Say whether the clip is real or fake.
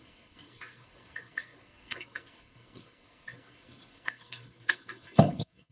fake